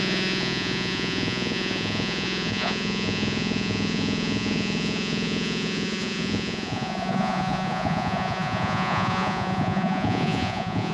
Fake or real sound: fake